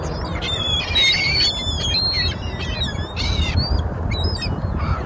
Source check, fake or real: real